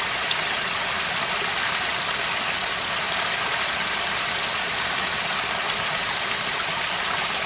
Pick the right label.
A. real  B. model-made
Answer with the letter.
A